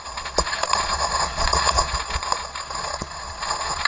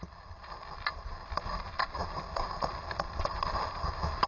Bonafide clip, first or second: second